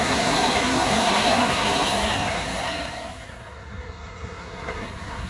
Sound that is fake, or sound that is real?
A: fake